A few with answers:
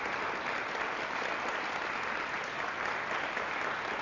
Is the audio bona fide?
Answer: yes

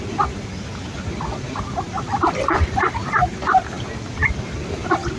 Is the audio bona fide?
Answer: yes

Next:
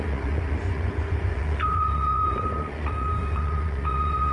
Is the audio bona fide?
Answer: no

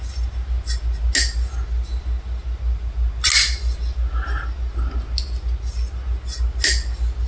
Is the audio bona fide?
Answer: yes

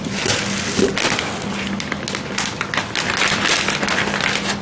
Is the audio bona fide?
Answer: yes